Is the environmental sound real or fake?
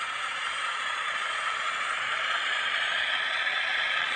fake